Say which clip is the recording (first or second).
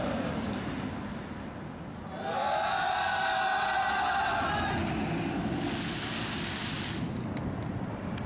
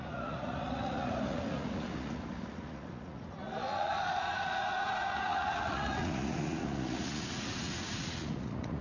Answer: first